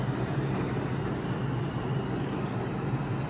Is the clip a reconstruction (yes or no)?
no